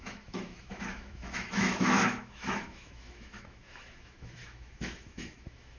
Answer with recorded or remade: remade